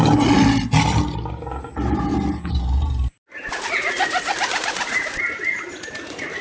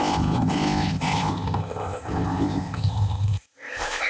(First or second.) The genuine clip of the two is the first